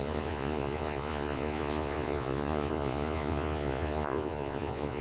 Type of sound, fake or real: fake